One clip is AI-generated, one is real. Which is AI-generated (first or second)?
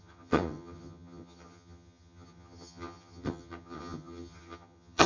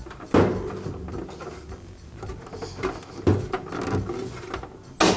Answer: first